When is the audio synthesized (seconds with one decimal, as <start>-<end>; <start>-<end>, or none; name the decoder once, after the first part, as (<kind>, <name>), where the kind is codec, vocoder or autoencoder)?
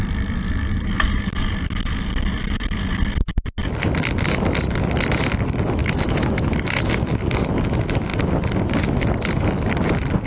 5.8-7.1 (autoencoder, DAC-VAE)